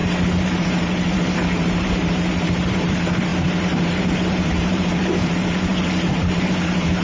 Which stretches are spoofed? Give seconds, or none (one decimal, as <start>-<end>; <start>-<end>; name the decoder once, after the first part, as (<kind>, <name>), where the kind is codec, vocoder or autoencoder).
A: 0.0-7.0 (vocoder, BigVGAN v2)